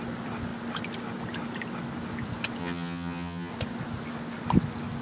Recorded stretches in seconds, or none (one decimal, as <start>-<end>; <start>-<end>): 0.0-2.6; 3.5-5.0

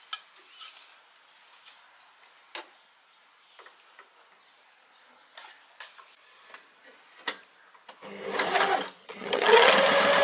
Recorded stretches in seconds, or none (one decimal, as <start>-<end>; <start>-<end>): 0.0-9.0; 9.7-10.2

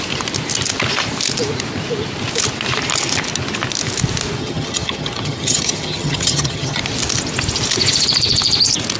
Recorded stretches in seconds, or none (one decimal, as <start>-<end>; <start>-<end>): 0.0-4.4; 6.8-9.0

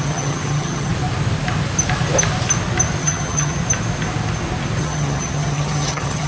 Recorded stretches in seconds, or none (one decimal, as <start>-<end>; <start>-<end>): 0.9-3.0; 3.6-4.8